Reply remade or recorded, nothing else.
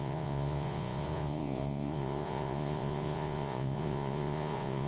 remade